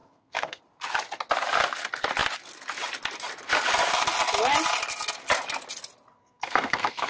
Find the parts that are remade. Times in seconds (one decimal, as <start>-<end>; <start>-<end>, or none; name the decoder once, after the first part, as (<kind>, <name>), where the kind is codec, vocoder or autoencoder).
0.0-0.6 (codec, SNAC); 6.2-7.1